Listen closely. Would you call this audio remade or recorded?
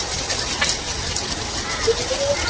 recorded